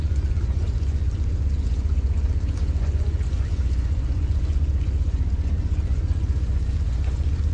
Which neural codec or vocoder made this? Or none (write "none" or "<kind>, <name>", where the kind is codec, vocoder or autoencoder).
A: vocoder, Vocos